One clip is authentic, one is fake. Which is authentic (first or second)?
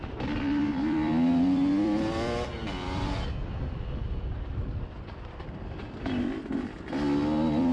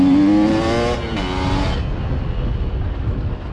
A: second